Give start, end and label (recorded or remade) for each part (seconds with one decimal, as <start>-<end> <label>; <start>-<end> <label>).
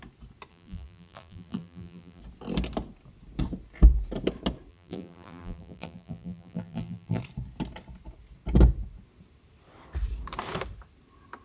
0.0-0.5 recorded; 0.5-2.2 remade; 2.2-4.7 recorded; 4.7-7.2 remade; 7.2-11.4 recorded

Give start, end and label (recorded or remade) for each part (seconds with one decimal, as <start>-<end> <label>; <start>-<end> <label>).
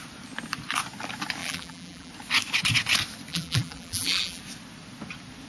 0.0-1.4 recorded; 1.4-2.1 remade; 2.1-3.3 recorded; 3.3-4.4 remade; 4.4-5.5 recorded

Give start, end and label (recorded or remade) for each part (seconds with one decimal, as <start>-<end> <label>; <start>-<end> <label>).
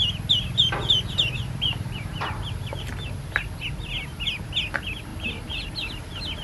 0.0-1.7 recorded; 1.7-2.9 remade; 2.9-5.1 recorded; 5.1-5.7 remade; 5.7-6.4 recorded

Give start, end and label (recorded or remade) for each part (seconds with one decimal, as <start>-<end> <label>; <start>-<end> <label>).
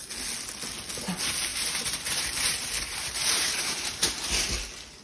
0.0-1.5 recorded; 1.5-4.3 remade; 4.3-5.0 recorded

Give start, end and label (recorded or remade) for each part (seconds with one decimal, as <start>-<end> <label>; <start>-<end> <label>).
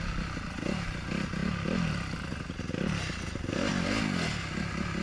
0.0-5.0 recorded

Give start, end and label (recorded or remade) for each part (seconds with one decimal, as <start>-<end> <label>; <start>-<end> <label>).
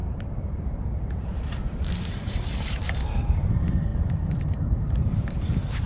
0.0-5.9 remade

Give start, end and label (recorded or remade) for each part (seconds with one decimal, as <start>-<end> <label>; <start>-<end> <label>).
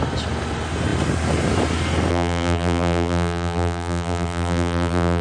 0.0-2.1 recorded; 2.1-5.2 remade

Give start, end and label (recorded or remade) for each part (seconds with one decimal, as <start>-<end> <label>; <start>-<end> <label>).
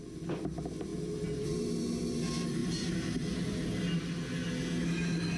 0.0-5.4 recorded